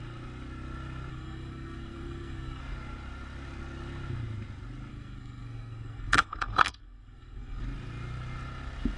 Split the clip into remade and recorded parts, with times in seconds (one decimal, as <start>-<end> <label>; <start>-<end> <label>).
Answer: 0.0-1.1 recorded; 1.1-2.6 remade; 2.6-4.9 recorded; 4.9-7.6 remade; 7.6-9.0 recorded